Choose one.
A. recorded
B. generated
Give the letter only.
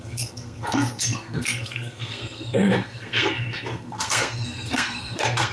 B